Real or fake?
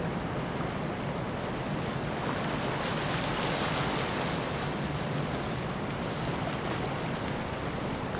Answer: real